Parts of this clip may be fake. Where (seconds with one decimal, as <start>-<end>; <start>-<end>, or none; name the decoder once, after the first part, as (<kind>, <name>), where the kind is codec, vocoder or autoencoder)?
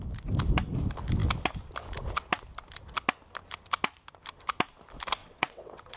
5.2-6.0 (vocoder, WaveNeXt)